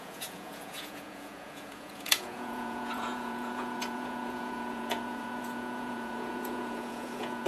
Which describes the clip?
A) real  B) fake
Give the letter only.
B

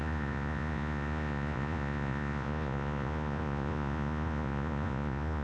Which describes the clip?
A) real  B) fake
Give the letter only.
B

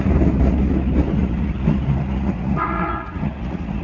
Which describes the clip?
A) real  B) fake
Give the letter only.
B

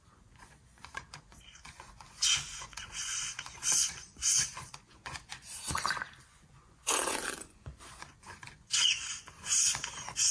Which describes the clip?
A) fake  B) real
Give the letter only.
A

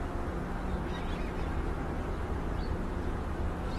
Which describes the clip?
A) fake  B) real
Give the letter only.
B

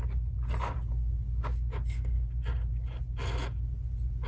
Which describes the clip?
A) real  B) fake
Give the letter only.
A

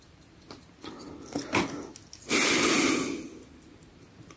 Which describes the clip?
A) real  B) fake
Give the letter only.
A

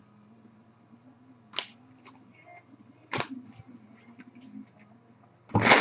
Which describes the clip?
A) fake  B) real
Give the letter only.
B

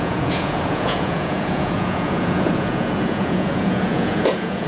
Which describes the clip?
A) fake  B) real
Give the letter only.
A